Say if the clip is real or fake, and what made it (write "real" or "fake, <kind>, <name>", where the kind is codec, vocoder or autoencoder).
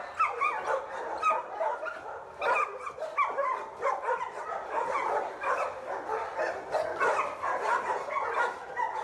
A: real